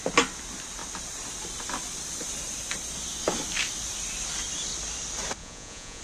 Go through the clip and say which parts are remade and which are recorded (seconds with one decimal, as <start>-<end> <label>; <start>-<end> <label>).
0.0-5.4 recorded; 5.4-6.0 remade